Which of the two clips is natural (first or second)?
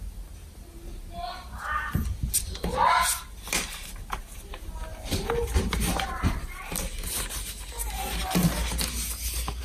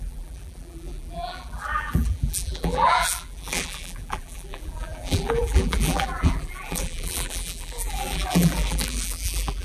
first